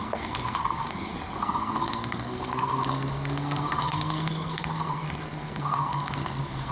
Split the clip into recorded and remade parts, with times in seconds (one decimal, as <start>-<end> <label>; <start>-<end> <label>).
0.0-6.7 remade